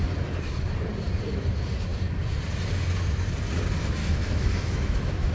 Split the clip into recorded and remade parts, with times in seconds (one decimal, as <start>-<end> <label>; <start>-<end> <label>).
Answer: 0.0-4.0 recorded; 4.0-5.3 remade